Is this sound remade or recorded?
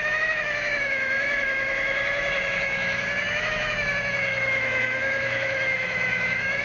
remade